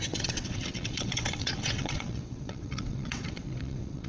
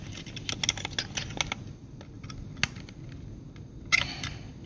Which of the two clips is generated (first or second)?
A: first